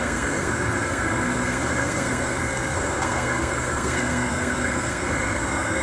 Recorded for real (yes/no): no